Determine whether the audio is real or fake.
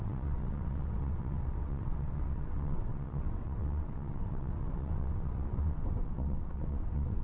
fake